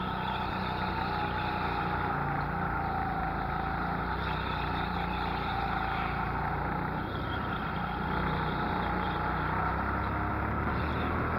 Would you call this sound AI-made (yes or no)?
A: no